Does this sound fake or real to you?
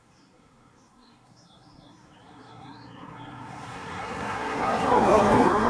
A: fake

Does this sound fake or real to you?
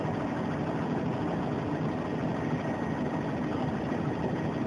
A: real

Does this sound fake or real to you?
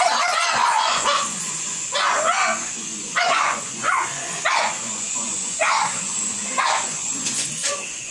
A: fake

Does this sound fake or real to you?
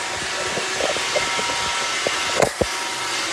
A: real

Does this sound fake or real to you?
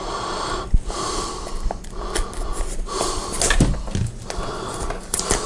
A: fake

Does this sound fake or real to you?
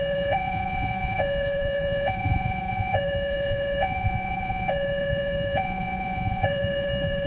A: fake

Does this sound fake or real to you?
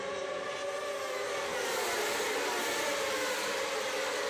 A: real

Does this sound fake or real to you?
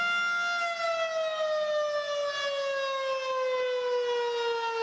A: real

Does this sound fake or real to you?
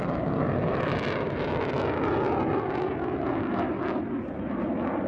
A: real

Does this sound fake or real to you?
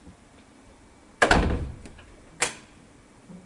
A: fake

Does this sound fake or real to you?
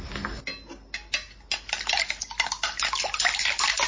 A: real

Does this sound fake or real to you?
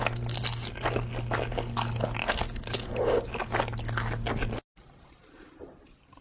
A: real